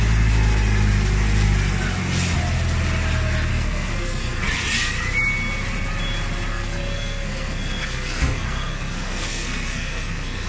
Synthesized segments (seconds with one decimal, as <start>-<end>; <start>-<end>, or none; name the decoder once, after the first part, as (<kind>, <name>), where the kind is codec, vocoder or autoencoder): 3.5-4.4 (codec, SNAC); 6.5-10.5